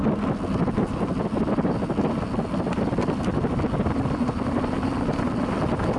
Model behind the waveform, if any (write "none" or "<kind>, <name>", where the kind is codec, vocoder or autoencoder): none